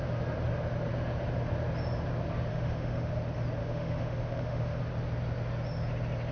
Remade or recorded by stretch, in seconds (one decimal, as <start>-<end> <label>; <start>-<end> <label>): 0.0-2.5 recorded; 2.5-3.1 remade; 3.1-3.6 recorded; 3.6-4.8 remade; 4.8-6.3 recorded